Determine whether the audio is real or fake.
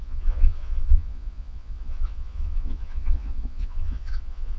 fake